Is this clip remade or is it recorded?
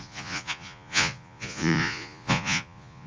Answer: remade